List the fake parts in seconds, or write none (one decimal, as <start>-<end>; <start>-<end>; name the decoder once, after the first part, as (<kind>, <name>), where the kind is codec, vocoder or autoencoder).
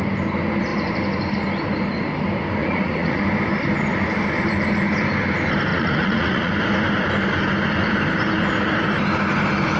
2.6-3.2 (vocoder, Vocos); 5.7-6.5